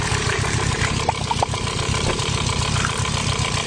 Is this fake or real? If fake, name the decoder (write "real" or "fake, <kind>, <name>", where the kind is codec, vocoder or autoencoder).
real